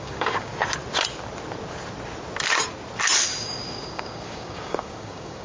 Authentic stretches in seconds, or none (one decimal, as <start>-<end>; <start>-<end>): 0.5-3.4